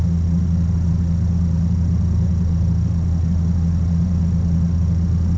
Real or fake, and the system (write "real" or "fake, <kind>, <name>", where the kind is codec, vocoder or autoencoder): real